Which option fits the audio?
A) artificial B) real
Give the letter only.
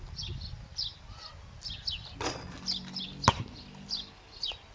B